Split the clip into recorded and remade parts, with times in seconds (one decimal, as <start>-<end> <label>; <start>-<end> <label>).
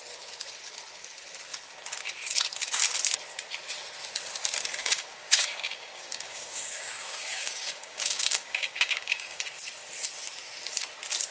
0.0-4.8 recorded; 4.8-9.4 remade; 9.4-11.3 recorded